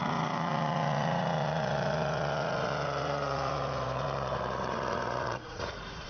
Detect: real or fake fake